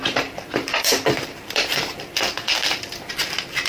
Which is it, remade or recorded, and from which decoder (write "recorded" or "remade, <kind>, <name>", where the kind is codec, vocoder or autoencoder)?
remade, vocoder, BigVGAN v2